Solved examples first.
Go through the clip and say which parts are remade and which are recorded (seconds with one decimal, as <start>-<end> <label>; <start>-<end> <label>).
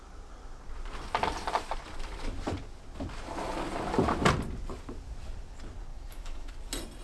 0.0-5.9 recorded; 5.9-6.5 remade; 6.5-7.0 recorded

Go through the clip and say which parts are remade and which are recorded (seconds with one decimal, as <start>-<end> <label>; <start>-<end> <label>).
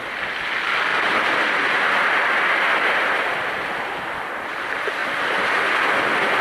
0.0-6.4 recorded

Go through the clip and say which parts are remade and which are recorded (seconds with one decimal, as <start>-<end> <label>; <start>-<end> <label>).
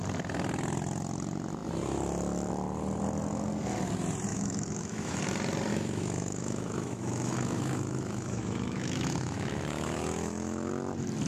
0.0-4.3 recorded; 4.3-5.2 remade; 5.2-5.7 recorded; 5.7-10.7 remade; 10.7-11.3 recorded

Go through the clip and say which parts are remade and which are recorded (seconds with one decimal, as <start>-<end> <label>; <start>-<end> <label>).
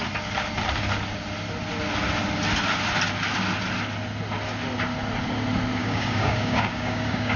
0.0-5.8 recorded; 5.8-7.4 remade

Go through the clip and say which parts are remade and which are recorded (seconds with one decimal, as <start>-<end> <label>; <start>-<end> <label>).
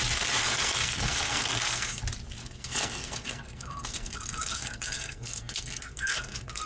0.0-0.4 recorded; 0.4-2.0 remade; 2.0-2.4 recorded; 2.4-6.7 remade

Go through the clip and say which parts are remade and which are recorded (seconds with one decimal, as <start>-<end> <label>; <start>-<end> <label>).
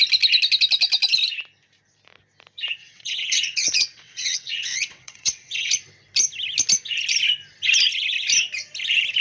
0.0-2.8 recorded; 2.8-5.7 remade; 5.7-9.2 recorded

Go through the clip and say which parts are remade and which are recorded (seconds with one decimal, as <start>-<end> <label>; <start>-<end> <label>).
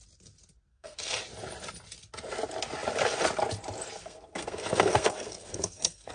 0.0-0.7 recorded; 0.7-1.2 remade; 1.2-4.0 recorded; 4.0-6.1 remade